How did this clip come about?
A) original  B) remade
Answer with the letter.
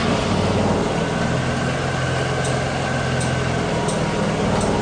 A